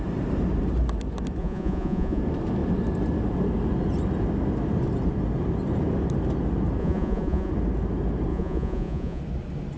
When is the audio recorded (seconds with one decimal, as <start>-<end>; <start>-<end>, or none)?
0.0-1.4; 2.2-6.8; 7.5-8.3; 9.2-9.8